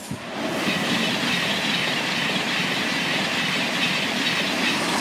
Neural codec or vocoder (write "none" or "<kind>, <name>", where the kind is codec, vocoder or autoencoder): none